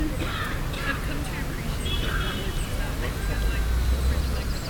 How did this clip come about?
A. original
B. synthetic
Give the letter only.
A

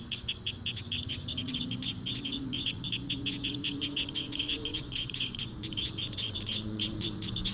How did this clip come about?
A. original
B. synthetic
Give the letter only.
B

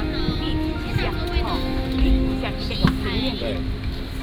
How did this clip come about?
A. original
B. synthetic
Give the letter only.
A